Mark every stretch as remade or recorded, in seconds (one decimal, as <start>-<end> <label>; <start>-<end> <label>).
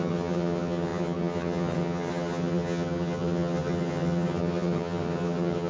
0.0-5.7 remade